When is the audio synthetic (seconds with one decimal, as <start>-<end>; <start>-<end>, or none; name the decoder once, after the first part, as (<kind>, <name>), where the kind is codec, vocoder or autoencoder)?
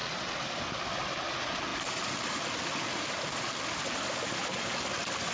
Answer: none